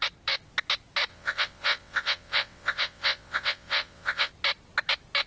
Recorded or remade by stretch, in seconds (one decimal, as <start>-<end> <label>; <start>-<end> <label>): 0.0-1.1 recorded; 1.1-4.3 remade; 4.3-5.3 recorded